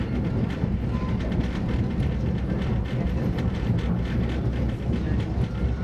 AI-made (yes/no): no